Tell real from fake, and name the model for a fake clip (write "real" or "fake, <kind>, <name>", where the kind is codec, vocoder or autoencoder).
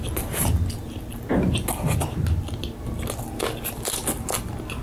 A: real